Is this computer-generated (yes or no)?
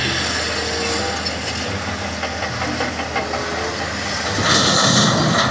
no